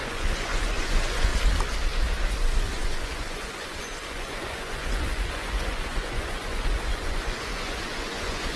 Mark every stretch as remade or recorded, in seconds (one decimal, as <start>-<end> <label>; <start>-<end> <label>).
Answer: 0.0-1.3 remade; 1.3-2.3 recorded; 2.3-8.6 remade